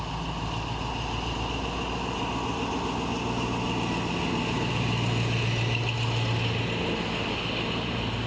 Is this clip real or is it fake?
real